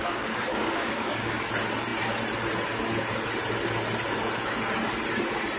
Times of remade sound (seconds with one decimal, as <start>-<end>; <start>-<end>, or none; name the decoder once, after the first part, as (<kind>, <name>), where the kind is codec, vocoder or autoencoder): 0.0-1.5 (codec, DAC)